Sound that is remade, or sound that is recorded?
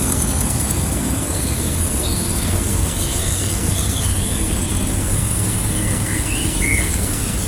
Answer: remade